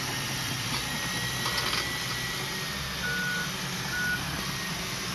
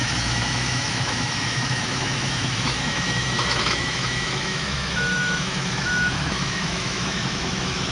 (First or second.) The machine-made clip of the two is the second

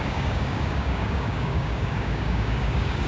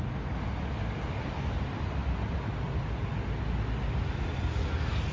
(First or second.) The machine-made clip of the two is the first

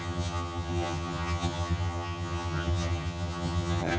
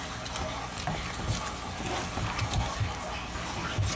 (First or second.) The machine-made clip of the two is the first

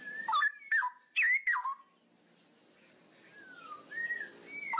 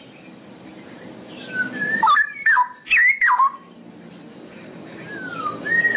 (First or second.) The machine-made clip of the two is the second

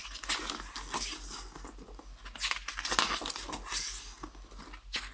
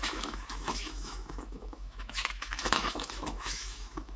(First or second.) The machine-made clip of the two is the second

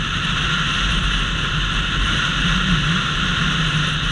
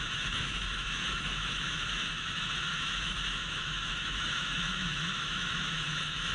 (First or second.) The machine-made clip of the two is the second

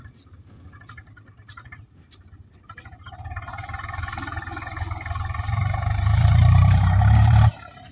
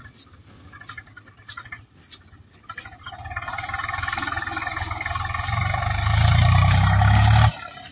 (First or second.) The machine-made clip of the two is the first